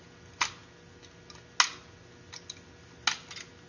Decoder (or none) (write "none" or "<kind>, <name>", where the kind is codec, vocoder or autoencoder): none